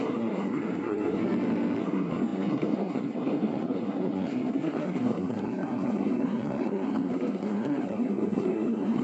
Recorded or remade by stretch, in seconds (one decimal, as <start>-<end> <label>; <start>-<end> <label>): 0.0-1.2 remade; 1.2-1.8 recorded; 1.8-9.0 remade